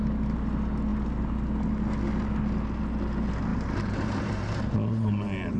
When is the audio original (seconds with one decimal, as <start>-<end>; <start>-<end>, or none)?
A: 0.0-3.5